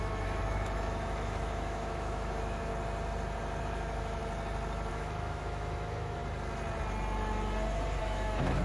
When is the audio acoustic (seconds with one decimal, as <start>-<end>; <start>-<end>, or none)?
2.7-3.6; 4.2-4.9; 6.2-8.0